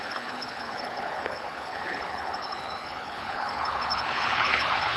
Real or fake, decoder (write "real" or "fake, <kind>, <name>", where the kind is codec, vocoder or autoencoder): fake, codec, HILCodec